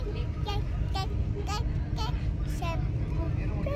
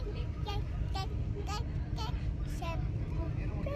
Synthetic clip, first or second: second